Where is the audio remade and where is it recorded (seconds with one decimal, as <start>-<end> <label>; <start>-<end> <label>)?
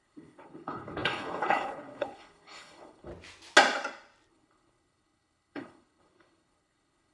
0.0-3.1 remade; 3.1-4.3 recorded; 4.3-7.1 remade